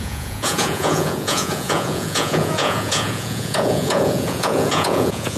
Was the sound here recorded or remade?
remade